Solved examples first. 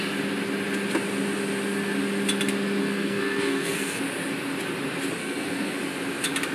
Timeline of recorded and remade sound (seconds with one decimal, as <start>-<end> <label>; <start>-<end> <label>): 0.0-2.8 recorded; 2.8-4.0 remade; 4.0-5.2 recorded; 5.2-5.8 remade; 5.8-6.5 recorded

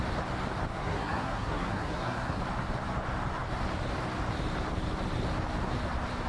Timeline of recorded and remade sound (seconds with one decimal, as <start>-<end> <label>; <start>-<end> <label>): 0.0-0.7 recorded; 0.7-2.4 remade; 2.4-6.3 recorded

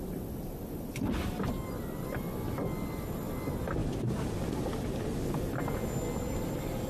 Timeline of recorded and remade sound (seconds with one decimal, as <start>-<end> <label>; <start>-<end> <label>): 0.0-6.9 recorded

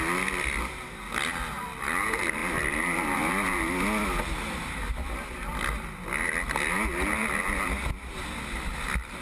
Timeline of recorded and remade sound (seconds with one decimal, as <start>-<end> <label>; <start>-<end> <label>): 0.0-9.2 recorded

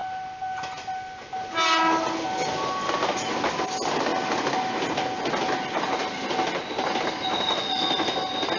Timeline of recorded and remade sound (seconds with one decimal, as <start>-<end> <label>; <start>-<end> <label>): 0.0-8.6 recorded

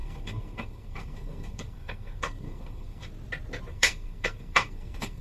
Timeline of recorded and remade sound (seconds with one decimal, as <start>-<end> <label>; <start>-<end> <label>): 0.0-3.1 remade; 3.1-3.7 recorded; 3.7-5.2 remade